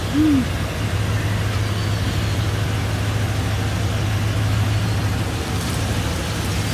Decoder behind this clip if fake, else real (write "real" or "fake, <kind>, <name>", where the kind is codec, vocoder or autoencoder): real